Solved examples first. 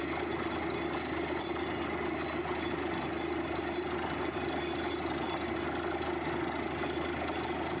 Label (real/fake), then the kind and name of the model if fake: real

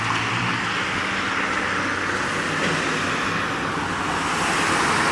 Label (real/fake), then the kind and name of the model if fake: real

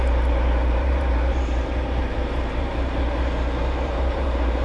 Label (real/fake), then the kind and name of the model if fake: fake, vocoder, BigVGAN v2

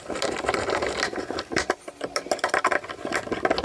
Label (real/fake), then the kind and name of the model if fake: real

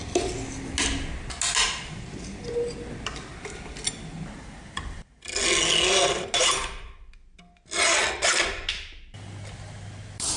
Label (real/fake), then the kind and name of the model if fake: real